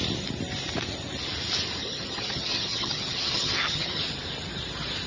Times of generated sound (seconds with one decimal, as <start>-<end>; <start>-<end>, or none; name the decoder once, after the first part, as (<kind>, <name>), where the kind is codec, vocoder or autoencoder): 1.8-4.0 (vocoder, HiFi-GAN)